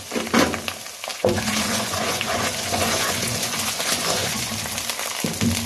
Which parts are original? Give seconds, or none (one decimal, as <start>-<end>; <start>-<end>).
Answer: 0.0-1.1; 4.5-5.7